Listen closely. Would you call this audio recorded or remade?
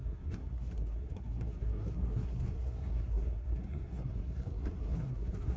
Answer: remade